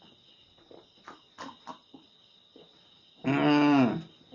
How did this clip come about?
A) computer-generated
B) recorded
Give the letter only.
B